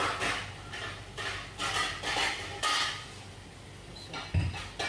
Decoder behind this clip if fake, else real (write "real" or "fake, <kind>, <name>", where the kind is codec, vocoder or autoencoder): real